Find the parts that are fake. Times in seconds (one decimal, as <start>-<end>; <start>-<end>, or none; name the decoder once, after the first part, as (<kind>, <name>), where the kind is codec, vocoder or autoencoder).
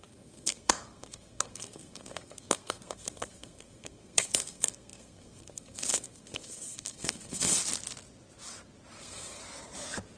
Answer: 0.0-7.6 (codec, SNAC); 9.0-9.4